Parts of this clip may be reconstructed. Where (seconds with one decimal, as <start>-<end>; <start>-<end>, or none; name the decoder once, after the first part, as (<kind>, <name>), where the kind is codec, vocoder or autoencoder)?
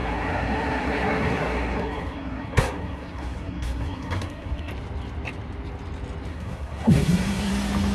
0.0-4.7 (codec, SNAC); 6.3-7.5